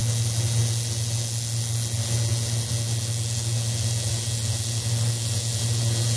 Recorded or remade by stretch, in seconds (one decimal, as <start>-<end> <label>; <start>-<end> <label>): 0.0-6.2 recorded